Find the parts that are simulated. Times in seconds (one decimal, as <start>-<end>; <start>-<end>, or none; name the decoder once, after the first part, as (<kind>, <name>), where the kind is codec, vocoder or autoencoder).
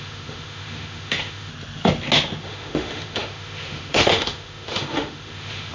0.0-1.5 (autoencoder, DAC-VAE); 2.4-5.7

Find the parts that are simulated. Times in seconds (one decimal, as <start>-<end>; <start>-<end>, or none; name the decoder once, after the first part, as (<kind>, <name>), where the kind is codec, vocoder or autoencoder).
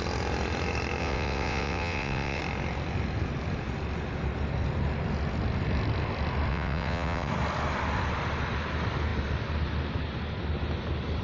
1.0-2.4 (vocoder, WaveNeXt); 6.5-7.3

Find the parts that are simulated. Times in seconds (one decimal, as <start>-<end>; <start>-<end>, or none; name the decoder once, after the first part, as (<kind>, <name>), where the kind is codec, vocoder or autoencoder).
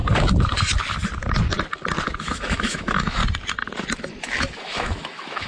2.2-3.2 (autoencoder, DAC-VAE); 4.2-5.5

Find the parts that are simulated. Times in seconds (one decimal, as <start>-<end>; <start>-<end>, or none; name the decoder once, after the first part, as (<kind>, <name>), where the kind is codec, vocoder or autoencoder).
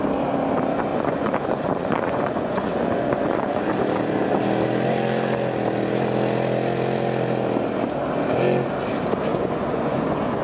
0.9-3.6 (vocoder, Vocos); 9.3-10.4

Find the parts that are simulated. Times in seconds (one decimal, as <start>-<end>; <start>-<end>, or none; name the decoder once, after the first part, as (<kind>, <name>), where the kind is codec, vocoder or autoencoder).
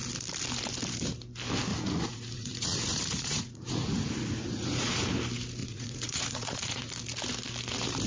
1.7-4.9 (vocoder, Vocos); 5.6-6.9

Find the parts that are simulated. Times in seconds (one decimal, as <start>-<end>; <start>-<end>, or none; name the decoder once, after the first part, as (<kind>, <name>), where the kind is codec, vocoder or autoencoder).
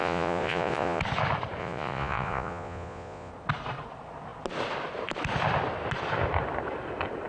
0.0-1.0 (vocoder, Vocos); 1.6-3.3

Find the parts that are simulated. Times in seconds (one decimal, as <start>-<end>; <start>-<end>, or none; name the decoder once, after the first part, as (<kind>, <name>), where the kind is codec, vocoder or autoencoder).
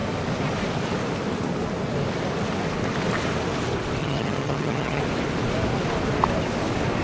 4.0-5.0 (vocoder, HiFi-GAN)